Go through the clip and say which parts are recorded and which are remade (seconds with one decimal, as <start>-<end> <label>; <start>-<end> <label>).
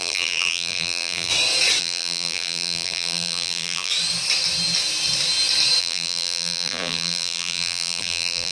0.0-1.3 remade; 1.3-1.8 recorded; 1.8-3.9 remade; 3.9-5.8 recorded; 5.8-8.5 remade